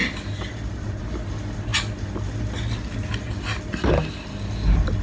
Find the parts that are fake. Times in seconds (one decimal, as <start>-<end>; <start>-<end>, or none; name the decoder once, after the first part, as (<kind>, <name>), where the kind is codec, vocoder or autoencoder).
none